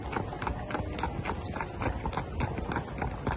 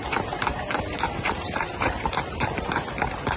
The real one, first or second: first